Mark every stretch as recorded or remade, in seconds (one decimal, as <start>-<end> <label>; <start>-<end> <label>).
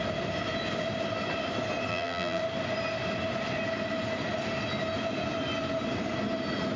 0.0-1.9 recorded; 1.9-2.4 remade; 2.4-6.8 recorded